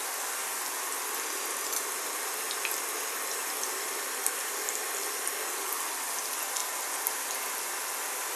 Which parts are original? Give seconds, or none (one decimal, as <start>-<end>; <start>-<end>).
0.0-8.4